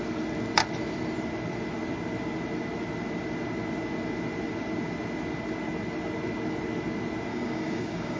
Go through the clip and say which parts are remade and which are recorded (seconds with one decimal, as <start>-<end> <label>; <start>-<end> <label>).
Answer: 0.0-7.3 recorded; 7.3-8.2 remade